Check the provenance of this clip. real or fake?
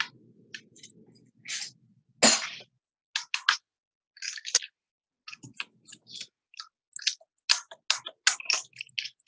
real